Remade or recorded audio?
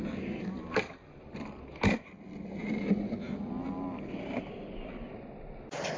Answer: recorded